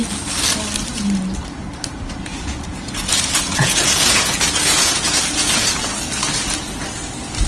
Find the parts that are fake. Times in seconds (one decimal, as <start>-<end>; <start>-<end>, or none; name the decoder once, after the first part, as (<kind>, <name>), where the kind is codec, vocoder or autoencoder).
2.3-5.9 (vocoder, Vocos)